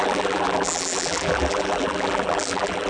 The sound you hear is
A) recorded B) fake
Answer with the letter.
B